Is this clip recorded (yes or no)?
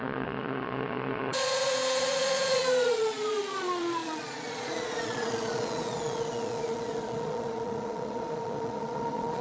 no